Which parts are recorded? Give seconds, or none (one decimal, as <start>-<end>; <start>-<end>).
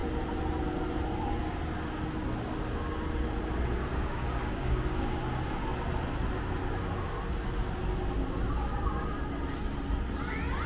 0.0-3.9; 5.1-10.7